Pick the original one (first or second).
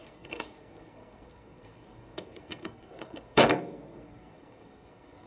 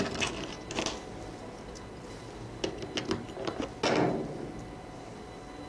second